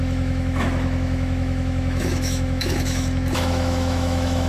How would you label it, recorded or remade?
remade